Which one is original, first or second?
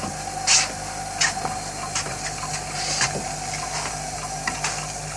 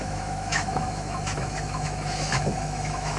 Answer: first